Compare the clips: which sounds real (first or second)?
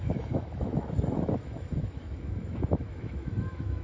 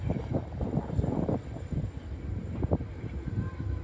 second